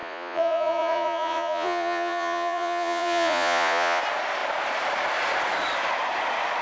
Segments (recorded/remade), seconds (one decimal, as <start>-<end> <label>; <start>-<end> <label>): 0.0-4.0 remade; 4.0-6.6 recorded